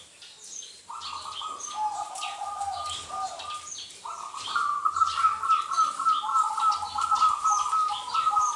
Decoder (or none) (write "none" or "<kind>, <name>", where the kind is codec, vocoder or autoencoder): none